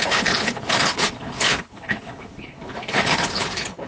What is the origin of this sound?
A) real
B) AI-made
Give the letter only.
B